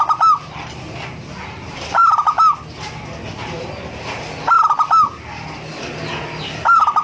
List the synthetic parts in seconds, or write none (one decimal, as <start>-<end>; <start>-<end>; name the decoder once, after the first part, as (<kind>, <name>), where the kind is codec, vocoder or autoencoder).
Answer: none